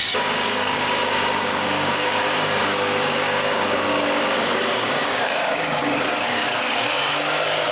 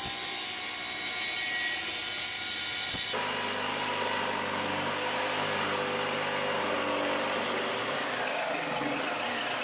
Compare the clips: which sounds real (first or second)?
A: second